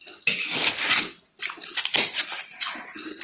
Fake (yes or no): no